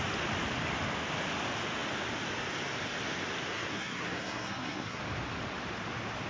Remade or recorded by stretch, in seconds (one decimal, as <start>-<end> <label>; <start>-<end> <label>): 0.0-3.5 recorded; 3.5-5.0 remade; 5.0-6.3 recorded